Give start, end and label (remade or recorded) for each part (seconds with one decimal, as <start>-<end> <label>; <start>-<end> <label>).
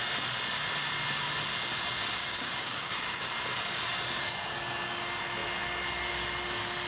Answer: 0.0-2.2 recorded; 2.2-3.3 remade; 3.3-6.9 recorded